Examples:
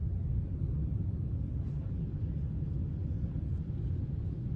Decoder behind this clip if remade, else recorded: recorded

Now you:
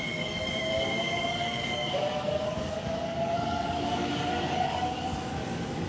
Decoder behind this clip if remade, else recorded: remade, codec, DAC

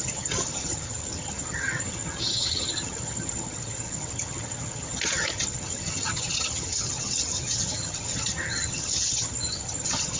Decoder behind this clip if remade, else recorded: remade, vocoder, HiFi-GAN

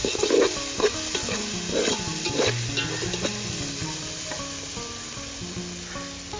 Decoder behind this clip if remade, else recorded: recorded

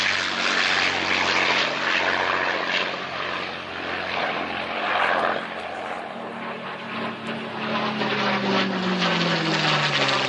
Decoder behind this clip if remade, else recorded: recorded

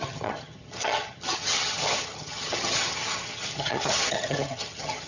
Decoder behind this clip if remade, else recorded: remade, vocoder, HiFi-GAN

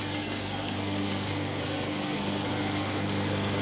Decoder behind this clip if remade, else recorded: remade, codec, SNAC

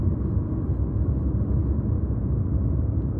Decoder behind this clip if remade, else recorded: recorded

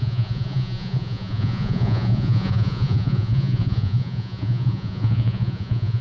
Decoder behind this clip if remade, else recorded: remade, vocoder, Vocos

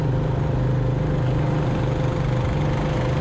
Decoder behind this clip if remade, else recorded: recorded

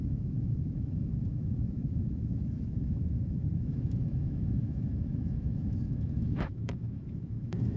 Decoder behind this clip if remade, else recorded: remade, autoencoder, DAC-VAE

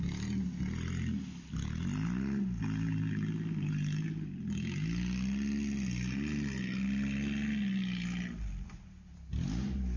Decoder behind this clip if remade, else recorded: recorded